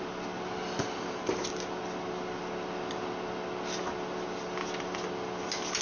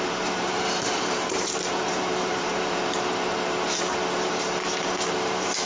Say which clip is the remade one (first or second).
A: second